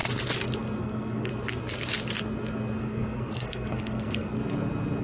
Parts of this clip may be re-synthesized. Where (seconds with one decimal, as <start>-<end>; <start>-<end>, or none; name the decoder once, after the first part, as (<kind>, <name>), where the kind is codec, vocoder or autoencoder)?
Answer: 0.8-1.3 (codec, SNAC); 2.8-4.4